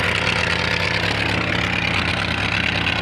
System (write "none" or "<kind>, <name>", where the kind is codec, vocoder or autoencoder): none